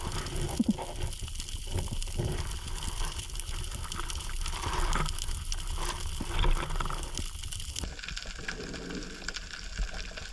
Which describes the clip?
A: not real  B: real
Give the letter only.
B